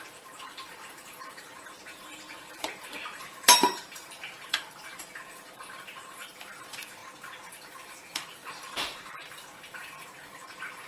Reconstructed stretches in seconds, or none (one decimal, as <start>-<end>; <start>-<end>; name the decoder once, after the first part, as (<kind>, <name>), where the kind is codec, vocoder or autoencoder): 0.0-7.0 (vocoder, BigVGAN v2); 7.5-10.9